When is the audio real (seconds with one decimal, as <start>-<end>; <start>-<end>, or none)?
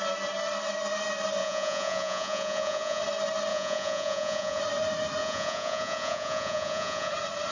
0.0-1.4; 3.0-3.5; 4.6-5.2; 7.1-7.5